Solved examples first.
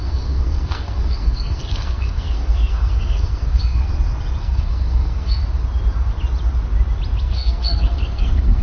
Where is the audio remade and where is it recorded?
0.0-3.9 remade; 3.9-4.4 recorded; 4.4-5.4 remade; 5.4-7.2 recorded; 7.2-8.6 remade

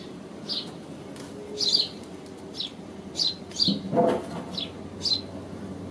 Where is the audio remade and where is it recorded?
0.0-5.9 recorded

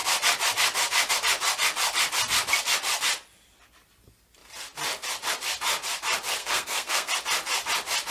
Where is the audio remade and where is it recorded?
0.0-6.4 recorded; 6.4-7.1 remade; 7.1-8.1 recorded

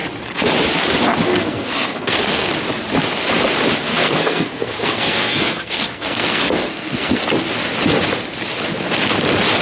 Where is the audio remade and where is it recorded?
0.0-1.3 recorded; 1.3-2.5 remade; 2.5-3.9 recorded; 3.9-7.2 remade; 7.2-9.6 recorded

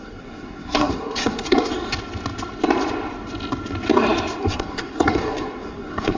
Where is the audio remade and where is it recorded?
0.0-1.7 remade; 1.7-4.4 recorded; 4.4-6.2 remade

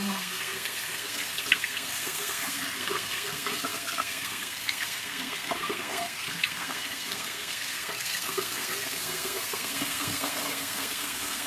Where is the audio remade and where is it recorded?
0.0-11.5 remade

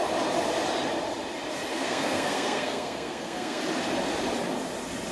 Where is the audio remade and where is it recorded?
0.0-1.7 recorded; 1.7-3.6 remade; 3.6-5.1 recorded

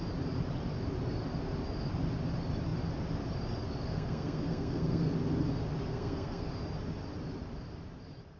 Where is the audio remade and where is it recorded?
0.0-3.9 recorded; 3.9-5.0 remade; 5.0-5.9 recorded; 5.9-6.5 remade; 6.5-8.4 recorded